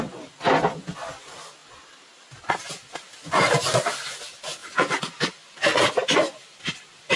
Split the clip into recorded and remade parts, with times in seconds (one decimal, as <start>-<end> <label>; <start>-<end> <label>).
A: 0.0-7.2 recorded